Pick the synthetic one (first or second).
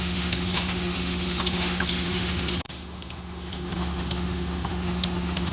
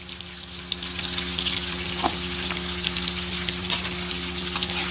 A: first